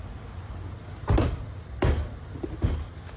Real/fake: real